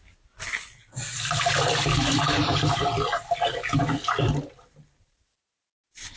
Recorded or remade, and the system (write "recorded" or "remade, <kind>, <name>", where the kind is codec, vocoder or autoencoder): recorded